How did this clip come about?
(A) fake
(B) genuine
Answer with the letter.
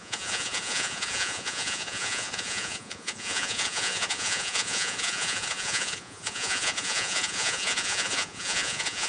A